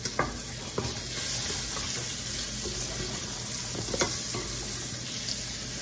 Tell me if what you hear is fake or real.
real